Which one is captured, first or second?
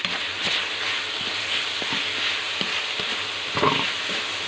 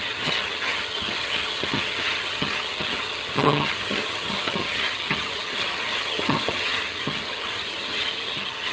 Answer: first